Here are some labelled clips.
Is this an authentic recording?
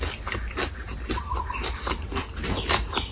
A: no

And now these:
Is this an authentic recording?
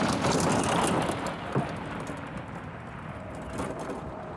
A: yes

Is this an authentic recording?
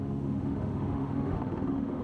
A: no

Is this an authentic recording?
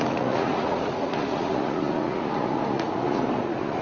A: no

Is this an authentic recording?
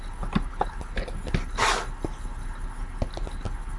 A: yes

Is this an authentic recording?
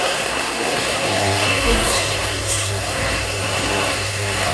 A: no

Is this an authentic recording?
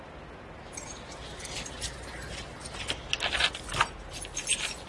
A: yes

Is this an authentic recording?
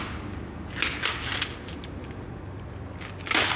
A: yes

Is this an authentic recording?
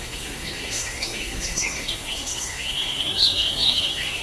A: no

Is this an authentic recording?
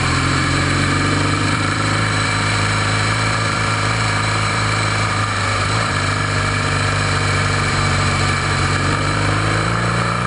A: no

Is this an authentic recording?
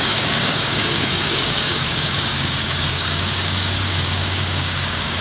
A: no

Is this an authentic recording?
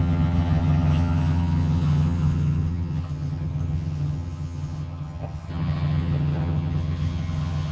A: no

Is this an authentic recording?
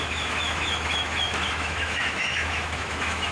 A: no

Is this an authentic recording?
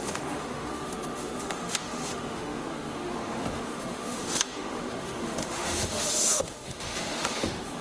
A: no